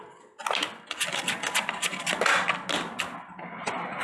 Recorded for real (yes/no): yes